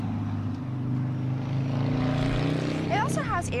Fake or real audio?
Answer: real